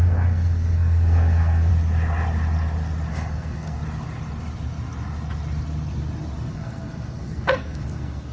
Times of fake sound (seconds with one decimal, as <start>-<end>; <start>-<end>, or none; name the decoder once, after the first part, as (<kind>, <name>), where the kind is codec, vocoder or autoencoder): 0.0-1.7 (codec, SNAC); 3.1-3.8; 6.5-8.3